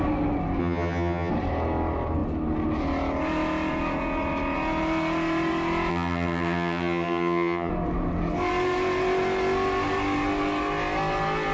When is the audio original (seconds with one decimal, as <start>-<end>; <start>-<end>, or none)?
0.0-0.6; 1.3-5.9; 7.7-11.5